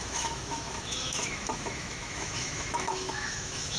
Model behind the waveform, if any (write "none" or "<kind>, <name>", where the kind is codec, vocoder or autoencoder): autoencoder, DAC-VAE